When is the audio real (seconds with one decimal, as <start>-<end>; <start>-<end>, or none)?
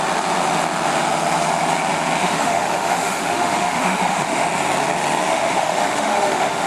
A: 0.0-2.2; 4.5-5.3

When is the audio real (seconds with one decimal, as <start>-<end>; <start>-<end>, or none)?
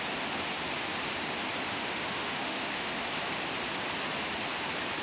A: 0.0-1.7; 2.9-5.0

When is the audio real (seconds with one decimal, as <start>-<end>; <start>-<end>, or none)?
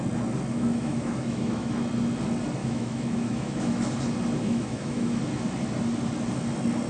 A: 0.0-0.5; 1.7-2.6; 3.9-4.4; 5.2-6.9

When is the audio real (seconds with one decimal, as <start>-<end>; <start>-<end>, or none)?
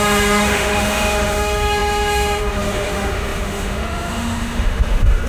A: none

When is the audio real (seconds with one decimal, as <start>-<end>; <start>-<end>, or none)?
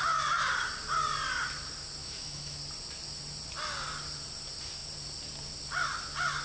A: 0.0-2.0; 2.6-6.4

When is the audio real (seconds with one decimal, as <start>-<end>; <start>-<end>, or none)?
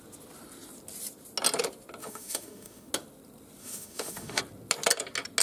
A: 0.0-2.0; 2.9-3.6; 4.4-5.4